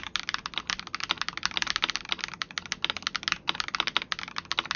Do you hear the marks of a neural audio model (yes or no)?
no